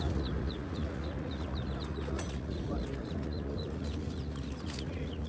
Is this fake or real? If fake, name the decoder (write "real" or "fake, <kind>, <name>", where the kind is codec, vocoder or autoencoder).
fake, vocoder, Vocos